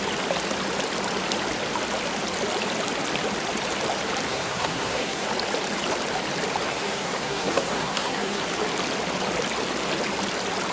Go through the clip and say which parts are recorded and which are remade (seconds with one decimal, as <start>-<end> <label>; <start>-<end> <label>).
0.0-4.3 recorded; 4.3-5.3 remade; 5.3-6.7 recorded; 6.7-8.4 remade; 8.4-10.7 recorded